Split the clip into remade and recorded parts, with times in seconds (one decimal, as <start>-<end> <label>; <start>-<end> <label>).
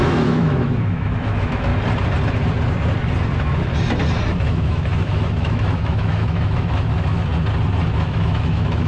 0.0-1.7 remade; 1.7-4.4 recorded; 4.4-7.3 remade; 7.3-8.0 recorded; 8.0-8.9 remade